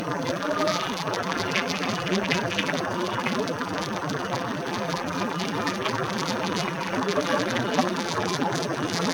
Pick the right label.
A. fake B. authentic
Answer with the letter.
A